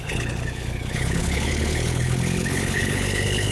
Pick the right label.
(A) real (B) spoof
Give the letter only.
B